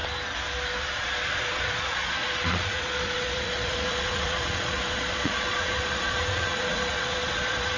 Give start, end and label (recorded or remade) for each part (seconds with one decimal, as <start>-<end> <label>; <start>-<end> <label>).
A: 0.0-0.8 recorded; 0.8-7.8 remade